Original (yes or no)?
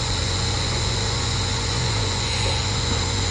no